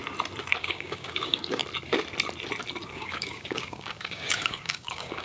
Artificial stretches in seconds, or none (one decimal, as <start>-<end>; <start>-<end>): 0.6-1.6; 2.9-5.2